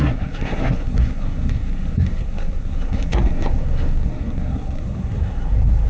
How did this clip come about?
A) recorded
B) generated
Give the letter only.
B